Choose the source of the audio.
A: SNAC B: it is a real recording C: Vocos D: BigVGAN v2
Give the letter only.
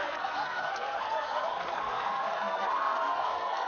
A